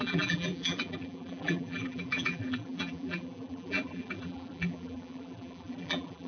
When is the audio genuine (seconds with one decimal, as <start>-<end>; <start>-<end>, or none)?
none